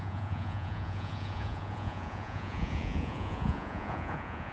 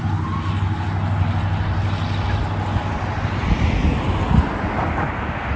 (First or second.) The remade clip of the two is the first